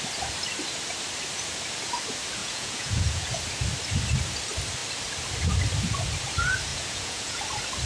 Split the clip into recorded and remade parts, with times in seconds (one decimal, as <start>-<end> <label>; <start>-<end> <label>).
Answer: 0.0-2.4 recorded; 2.4-3.3 remade; 3.3-6.7 recorded; 6.7-7.4 remade; 7.4-7.9 recorded